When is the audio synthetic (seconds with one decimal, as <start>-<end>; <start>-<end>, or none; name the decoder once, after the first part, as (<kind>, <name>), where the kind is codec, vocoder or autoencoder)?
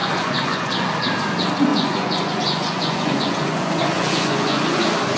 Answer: 0.0-0.9 (vocoder, Vocos); 1.7-4.8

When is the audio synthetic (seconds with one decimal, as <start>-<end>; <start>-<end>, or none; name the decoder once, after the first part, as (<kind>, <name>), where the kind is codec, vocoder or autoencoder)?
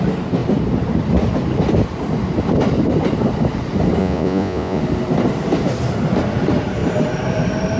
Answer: 4.0-4.8 (vocoder, Vocos)